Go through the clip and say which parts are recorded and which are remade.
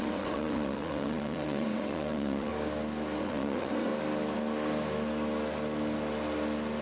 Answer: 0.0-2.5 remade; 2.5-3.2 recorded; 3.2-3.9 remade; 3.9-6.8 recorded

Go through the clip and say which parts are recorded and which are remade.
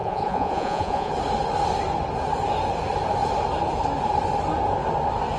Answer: 0.0-1.1 remade; 1.1-5.4 recorded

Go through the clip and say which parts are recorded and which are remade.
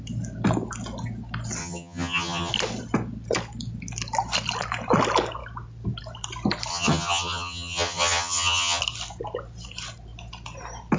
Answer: 0.0-1.6 recorded; 1.6-2.5 remade; 2.5-6.7 recorded; 6.7-8.8 remade; 8.8-11.0 recorded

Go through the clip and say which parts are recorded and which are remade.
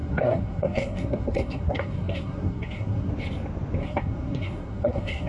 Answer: 0.0-3.1 remade; 3.1-3.8 recorded; 3.8-5.3 remade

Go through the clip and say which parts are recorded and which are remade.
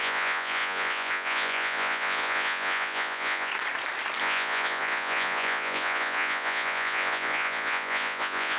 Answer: 0.0-3.5 remade; 3.5-4.2 recorded; 4.2-8.6 remade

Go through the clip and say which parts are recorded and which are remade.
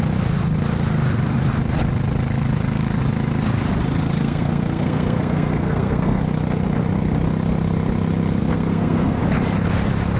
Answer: 0.0-4.2 recorded; 4.2-6.2 remade; 6.2-8.4 recorded; 8.4-9.2 remade; 9.2-10.2 recorded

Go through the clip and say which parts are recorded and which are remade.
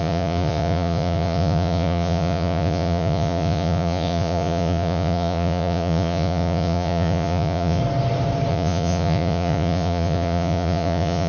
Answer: 0.0-7.8 remade; 7.8-8.5 recorded; 8.5-11.3 remade